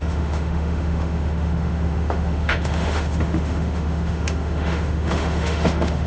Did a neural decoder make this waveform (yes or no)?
yes